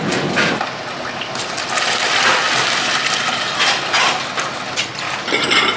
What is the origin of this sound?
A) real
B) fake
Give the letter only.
A